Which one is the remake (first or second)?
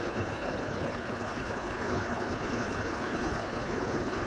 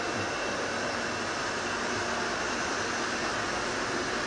first